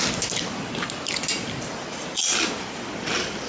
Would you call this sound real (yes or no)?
yes